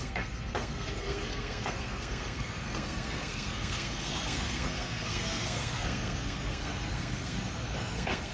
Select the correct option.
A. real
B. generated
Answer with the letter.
B